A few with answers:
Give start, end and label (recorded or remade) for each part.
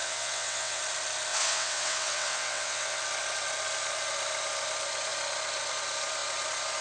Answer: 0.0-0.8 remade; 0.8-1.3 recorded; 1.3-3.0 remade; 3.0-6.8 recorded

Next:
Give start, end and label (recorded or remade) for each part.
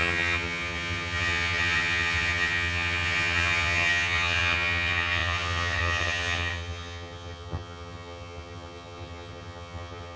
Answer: 0.0-10.2 remade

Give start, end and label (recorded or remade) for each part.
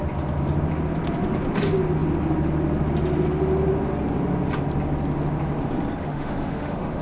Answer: 0.0-6.0 recorded; 6.0-7.0 remade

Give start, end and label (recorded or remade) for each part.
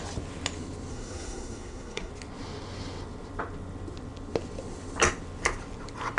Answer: 0.0-0.9 recorded; 0.9-2.1 remade; 2.1-6.2 recorded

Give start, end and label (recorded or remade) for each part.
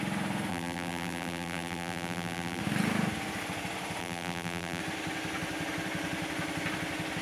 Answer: 0.0-0.5 recorded; 0.5-2.6 remade; 2.6-4.0 recorded; 4.0-4.8 remade; 4.8-7.2 recorded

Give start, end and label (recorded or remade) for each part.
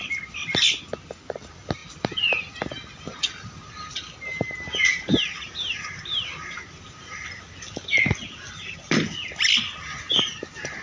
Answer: 0.0-1.8 recorded; 1.8-2.5 remade; 2.5-5.0 recorded; 5.0-7.1 remade; 7.1-10.8 recorded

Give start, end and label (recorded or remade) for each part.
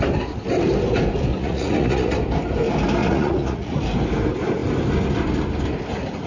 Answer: 0.0-1.3 recorded; 1.3-2.2 remade; 2.2-3.0 recorded; 3.0-3.8 remade; 3.8-6.3 recorded